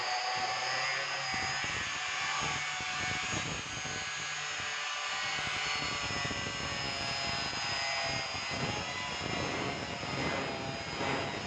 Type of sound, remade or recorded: recorded